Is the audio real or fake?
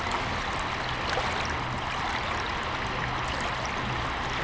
real